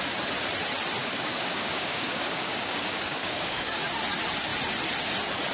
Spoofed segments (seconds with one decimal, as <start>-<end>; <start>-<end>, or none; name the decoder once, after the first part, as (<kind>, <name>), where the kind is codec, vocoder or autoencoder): 1.0-3.8 (codec, DAC)